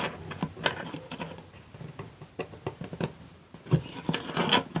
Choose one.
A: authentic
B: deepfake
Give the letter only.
A